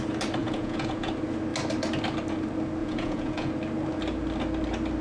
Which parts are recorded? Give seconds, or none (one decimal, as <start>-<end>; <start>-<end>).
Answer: 0.0-0.4; 1.1-2.8; 3.5-5.0